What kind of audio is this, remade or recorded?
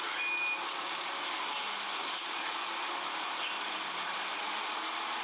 recorded